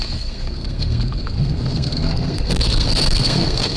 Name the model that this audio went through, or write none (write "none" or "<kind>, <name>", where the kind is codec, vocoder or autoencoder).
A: codec, SNAC